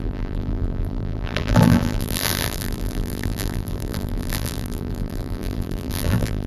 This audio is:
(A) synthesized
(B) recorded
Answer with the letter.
A